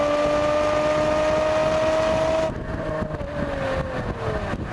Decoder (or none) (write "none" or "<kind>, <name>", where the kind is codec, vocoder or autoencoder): none